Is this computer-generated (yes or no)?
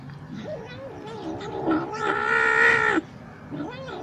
no